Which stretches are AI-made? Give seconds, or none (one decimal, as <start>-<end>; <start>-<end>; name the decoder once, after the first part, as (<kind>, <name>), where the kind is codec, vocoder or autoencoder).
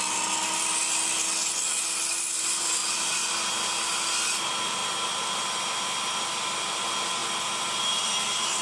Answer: none